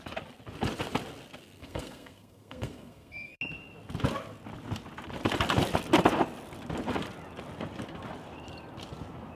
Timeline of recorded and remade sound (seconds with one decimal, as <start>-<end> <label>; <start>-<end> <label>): 0.0-1.6 recorded; 1.6-3.4 remade; 3.4-9.3 recorded